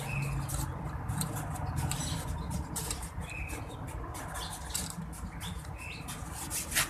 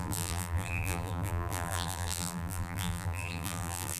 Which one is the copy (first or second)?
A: second